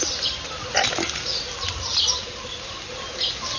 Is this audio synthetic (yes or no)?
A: no